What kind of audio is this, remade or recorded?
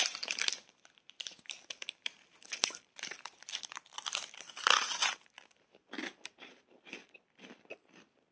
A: remade